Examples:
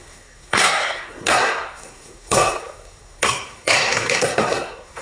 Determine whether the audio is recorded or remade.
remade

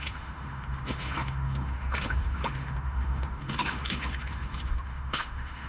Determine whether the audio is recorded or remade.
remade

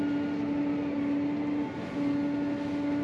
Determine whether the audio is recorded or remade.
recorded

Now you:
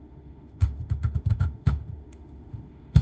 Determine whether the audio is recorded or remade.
remade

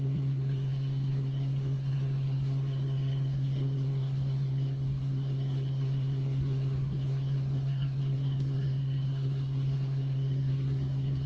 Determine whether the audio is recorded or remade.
remade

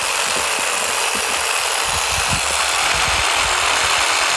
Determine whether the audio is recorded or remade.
recorded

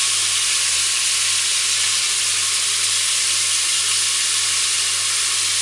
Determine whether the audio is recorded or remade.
recorded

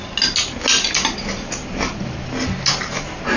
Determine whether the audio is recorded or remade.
recorded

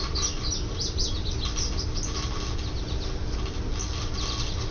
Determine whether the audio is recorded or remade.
recorded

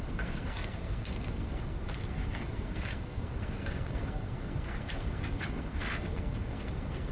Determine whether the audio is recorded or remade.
remade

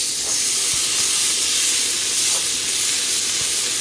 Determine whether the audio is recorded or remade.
recorded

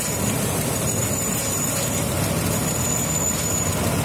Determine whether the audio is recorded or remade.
recorded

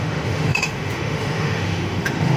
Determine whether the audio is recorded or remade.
remade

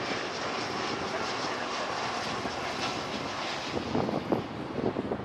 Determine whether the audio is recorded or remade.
recorded